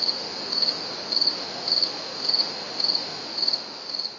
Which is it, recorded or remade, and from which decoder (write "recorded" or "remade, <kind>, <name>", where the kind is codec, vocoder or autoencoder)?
remade, autoencoder, DAC-VAE